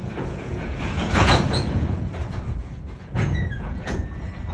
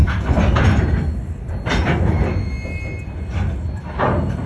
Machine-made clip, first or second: first